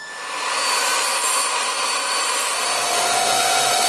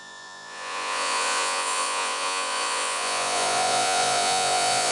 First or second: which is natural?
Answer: first